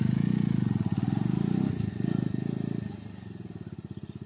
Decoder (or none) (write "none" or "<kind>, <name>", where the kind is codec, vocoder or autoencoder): none